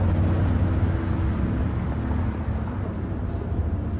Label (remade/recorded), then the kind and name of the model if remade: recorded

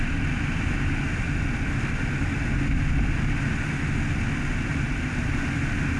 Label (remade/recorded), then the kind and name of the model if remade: recorded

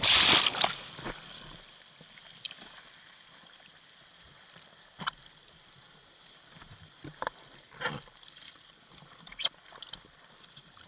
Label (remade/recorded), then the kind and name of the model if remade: remade, vocoder, BigVGAN v2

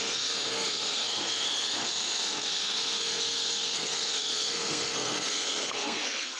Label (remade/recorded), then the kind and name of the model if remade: remade, codec, SNAC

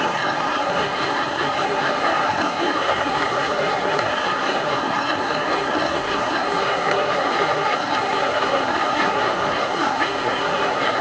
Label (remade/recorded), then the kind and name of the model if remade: remade, codec, SNAC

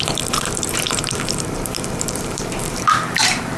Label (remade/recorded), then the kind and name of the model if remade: remade, vocoder, BigVGAN v2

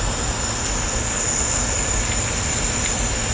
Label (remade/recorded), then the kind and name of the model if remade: recorded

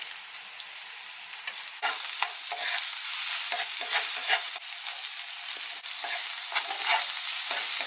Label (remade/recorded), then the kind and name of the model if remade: recorded